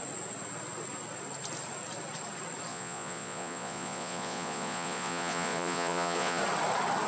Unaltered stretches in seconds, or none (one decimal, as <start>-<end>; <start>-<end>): 0.0-2.7; 6.4-7.1